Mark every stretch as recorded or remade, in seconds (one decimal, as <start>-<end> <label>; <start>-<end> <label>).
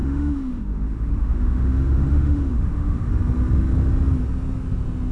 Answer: 0.0-3.1 remade; 3.1-5.1 recorded